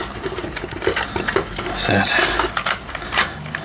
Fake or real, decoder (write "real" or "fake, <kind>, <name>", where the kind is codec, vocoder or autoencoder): real